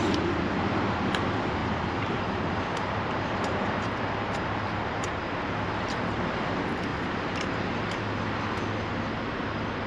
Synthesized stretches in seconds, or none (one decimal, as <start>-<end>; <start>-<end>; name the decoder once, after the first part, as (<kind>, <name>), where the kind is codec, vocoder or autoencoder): 1.6-5.2 (vocoder, BigVGAN v2); 6.9-8.0